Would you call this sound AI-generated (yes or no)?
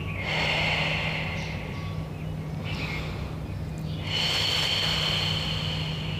no